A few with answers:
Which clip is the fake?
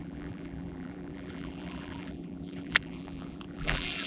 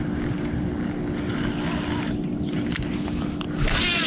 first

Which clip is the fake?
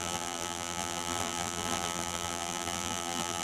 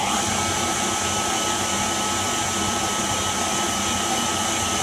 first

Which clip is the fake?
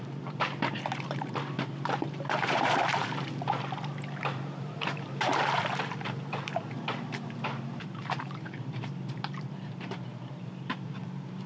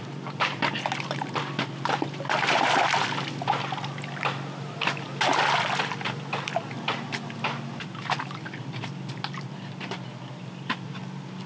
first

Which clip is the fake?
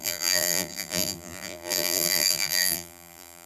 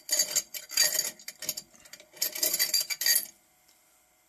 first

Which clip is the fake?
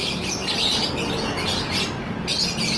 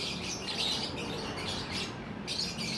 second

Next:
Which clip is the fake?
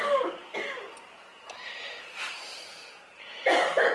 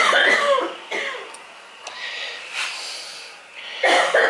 first